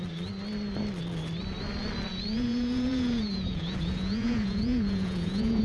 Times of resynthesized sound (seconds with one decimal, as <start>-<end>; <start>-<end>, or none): 2.1-5.6